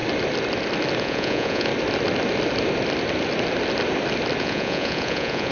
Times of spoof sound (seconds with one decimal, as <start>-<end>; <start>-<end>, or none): 1.0-1.7; 4.4-5.5